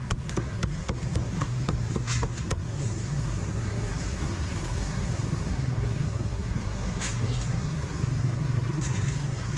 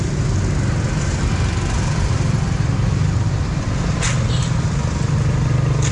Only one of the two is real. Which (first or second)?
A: second